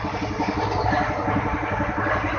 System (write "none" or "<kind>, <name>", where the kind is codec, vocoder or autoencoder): none